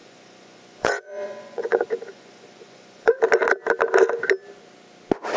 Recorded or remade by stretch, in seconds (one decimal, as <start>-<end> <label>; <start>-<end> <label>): 0.0-3.2 remade; 3.2-5.4 recorded